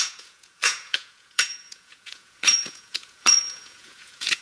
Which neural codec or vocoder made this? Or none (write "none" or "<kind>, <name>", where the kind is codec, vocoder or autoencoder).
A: vocoder, Vocos